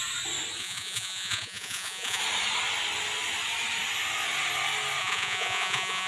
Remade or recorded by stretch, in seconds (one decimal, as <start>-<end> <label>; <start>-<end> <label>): 0.0-0.6 recorded; 0.6-2.2 remade; 2.2-5.0 recorded; 5.0-6.1 remade